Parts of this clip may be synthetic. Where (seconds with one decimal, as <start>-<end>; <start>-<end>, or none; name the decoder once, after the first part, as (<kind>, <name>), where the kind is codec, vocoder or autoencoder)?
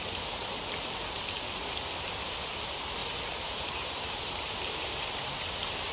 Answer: 3.0-4.1 (vocoder, BigVGAN v2)